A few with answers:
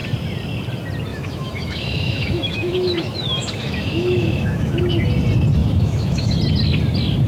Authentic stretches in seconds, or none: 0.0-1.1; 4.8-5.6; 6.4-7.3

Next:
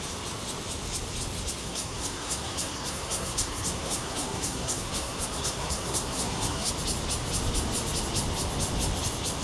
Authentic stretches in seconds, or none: 0.0-1.6; 6.7-9.4

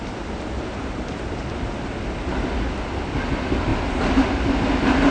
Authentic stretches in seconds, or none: 0.0-5.1

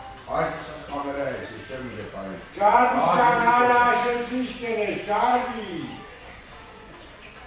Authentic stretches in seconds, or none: 0.0-0.8; 1.5-2.5; 3.5-5.3

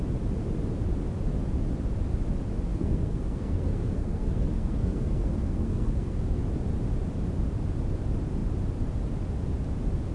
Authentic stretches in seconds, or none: 0.0-2.7; 6.4-10.1

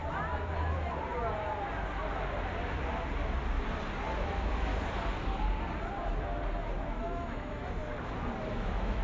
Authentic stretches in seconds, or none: 0.0-4.2; 4.7-7.0; 7.8-8.5

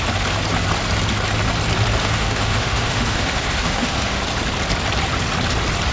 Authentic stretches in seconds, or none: 0.0-2.0; 4.2-5.9

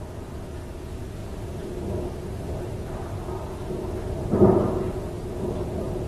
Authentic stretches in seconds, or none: 0.0-6.1